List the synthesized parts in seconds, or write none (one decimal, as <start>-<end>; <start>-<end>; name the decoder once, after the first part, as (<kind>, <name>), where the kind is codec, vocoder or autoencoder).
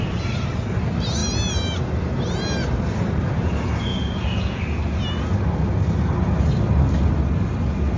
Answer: 3.9-4.6 (vocoder, Vocos)